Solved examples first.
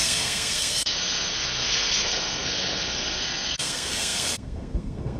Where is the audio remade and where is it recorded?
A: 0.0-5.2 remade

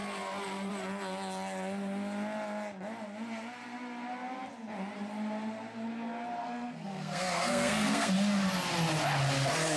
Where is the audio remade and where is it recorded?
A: 0.0-6.4 recorded; 6.4-8.1 remade; 8.1-9.8 recorded